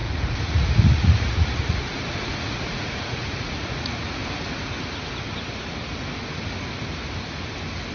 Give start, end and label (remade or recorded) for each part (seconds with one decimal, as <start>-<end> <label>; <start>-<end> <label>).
0.0-4.2 remade; 4.2-7.9 recorded